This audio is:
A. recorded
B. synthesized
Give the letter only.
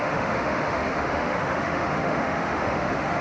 B